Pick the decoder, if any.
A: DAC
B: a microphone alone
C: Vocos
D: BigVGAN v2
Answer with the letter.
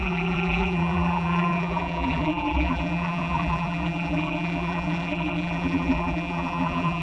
D